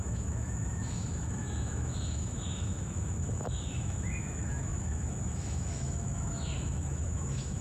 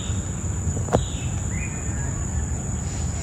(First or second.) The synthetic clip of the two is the first